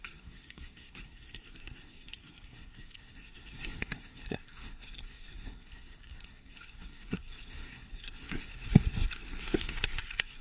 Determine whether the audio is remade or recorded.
remade